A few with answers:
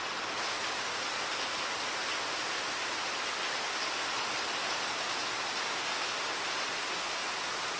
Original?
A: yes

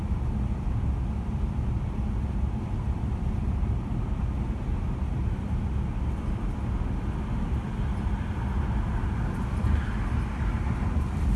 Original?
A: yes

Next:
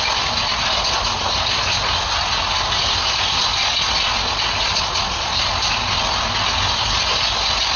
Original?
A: yes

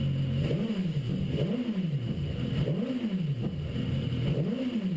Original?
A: yes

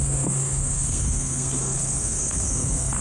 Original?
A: no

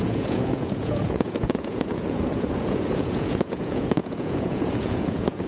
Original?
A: no